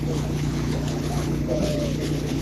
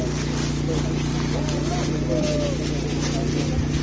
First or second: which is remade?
first